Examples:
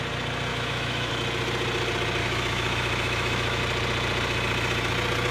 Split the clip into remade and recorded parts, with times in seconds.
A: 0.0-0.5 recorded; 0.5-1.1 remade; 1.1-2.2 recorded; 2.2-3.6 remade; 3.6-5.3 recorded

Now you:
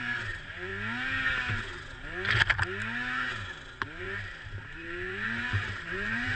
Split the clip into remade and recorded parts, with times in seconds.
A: 0.0-0.7 remade; 0.7-4.0 recorded; 4.0-6.4 remade

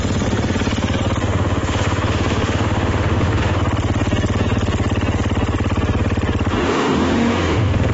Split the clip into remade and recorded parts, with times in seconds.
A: 0.0-1.2 recorded; 1.2-3.6 remade; 3.6-6.5 recorded; 6.5-7.9 remade

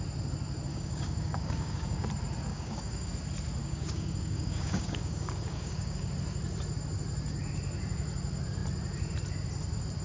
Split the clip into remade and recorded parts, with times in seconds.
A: 0.0-0.7 recorded; 0.7-2.1 remade; 2.1-2.5 recorded; 2.5-3.1 remade; 3.1-3.6 recorded; 3.6-6.1 remade; 6.1-10.0 recorded

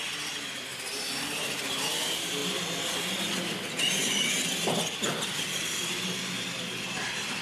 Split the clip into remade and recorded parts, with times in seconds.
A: 0.0-0.7 recorded; 0.7-1.6 remade; 1.6-7.4 recorded

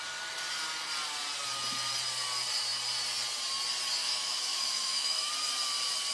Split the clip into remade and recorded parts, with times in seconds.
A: 0.0-4.0 recorded; 4.0-5.3 remade; 5.3-6.1 recorded

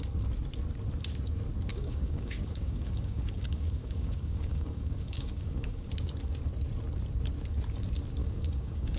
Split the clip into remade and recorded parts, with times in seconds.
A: 0.0-1.7 recorded; 1.7-5.9 remade; 5.9-8.2 recorded; 8.2-9.0 remade